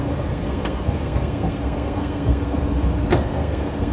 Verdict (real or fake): fake